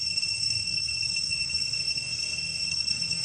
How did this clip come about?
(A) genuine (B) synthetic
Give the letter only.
B